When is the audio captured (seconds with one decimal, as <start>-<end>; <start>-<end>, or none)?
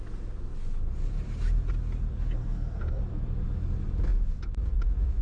0.0-2.4; 3.0-5.2